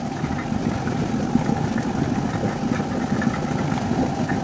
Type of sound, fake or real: real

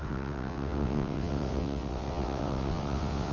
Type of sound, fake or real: fake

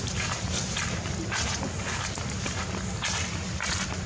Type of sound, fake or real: real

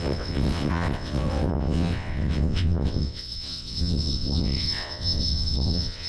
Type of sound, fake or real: fake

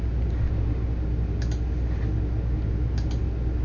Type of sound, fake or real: real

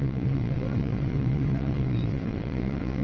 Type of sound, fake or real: fake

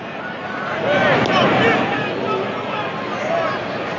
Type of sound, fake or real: real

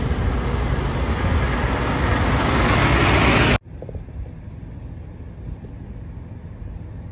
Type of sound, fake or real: real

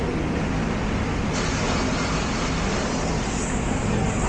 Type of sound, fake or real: real